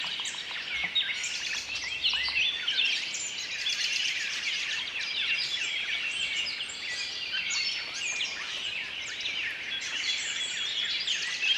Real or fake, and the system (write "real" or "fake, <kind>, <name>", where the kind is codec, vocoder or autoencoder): real